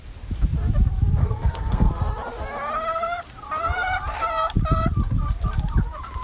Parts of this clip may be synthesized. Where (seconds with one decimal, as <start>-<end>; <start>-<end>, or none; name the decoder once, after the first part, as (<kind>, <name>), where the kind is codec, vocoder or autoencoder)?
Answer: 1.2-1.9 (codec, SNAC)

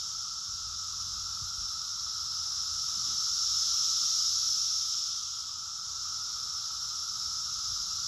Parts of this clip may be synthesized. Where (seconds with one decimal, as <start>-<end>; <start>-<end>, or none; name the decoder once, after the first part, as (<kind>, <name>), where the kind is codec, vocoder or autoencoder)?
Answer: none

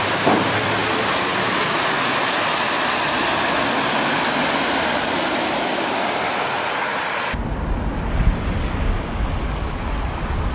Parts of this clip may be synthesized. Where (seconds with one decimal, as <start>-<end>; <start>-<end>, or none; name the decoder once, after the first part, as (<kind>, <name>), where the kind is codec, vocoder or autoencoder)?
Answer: 0.0-0.8 (vocoder, BigVGAN v2); 4.3-6.9; 9.7-10.5

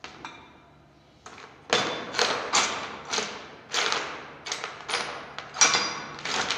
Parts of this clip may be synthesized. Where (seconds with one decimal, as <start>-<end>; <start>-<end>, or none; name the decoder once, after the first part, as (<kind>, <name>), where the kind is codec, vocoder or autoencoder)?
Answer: none

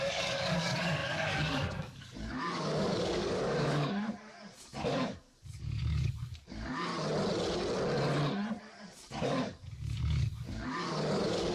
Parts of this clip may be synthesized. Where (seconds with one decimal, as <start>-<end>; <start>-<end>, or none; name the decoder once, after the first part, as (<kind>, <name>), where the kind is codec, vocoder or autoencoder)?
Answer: 0.0-6.9 (codec, DAC); 8.6-11.5

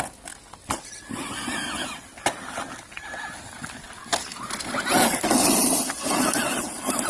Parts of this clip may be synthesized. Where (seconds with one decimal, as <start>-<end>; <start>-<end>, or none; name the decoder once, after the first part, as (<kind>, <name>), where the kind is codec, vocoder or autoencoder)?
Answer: none

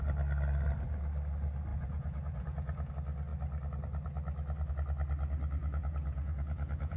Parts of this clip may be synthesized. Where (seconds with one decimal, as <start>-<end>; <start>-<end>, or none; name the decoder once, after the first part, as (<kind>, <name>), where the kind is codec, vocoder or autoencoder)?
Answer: 1.7-2.9 (vocoder, Vocos); 5.6-7.0

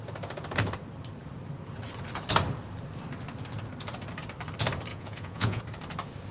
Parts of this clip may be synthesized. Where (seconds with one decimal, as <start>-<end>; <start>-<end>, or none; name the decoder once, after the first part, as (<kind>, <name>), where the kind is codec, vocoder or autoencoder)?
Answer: 4.9-5.6 (vocoder, Vocos)